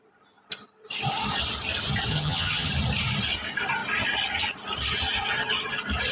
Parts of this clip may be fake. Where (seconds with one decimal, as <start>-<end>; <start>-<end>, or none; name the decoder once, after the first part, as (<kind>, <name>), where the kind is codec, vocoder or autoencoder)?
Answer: 2.1-2.7 (vocoder, HiFi-GAN)